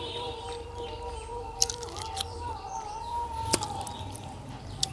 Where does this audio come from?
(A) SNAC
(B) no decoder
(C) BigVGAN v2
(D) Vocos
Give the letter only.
C